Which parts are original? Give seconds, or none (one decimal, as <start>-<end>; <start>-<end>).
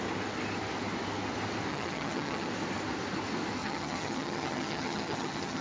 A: 0.0-1.7; 2.5-3.6